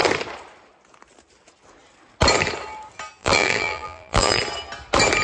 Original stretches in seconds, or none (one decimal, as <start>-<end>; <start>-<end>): 0.0-3.2; 4.4-5.2